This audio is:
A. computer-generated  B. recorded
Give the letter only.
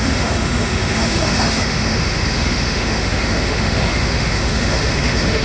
A